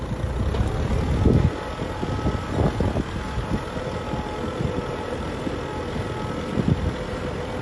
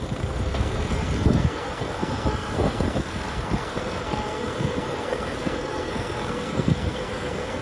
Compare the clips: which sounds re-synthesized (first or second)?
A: second